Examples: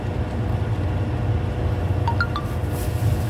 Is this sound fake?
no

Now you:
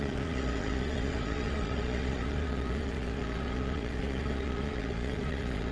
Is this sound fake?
yes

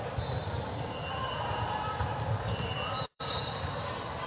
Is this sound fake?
yes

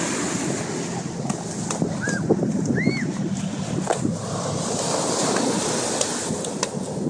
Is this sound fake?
no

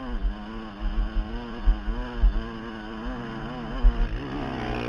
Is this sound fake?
no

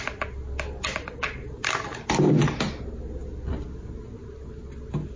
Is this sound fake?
no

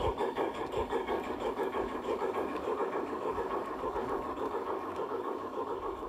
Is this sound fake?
yes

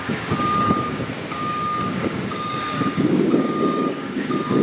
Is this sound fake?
yes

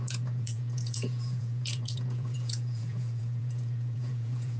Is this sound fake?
yes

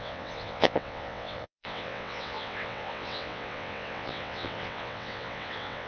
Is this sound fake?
yes